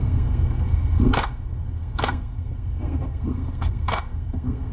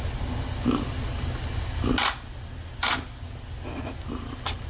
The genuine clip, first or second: second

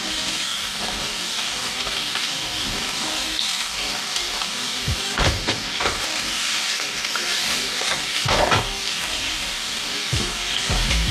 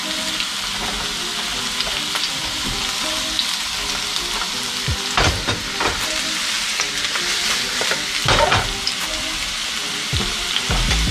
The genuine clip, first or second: second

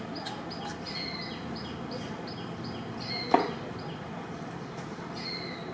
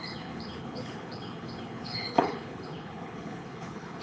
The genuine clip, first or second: first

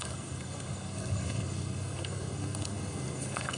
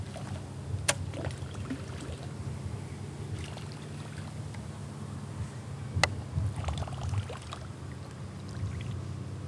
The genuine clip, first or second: second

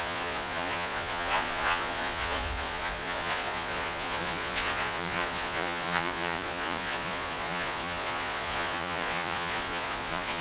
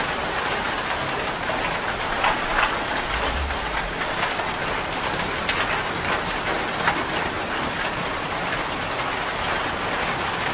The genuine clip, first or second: second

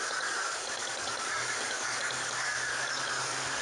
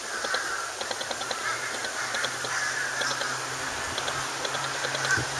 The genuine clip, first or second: second